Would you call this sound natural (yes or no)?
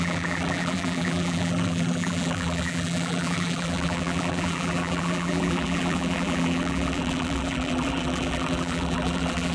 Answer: no